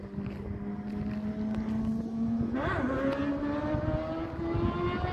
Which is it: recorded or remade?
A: recorded